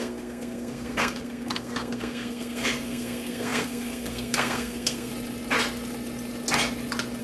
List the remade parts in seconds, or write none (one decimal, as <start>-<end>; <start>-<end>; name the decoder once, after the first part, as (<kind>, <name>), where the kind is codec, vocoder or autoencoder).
0.0-5.1 (codec, SNAC)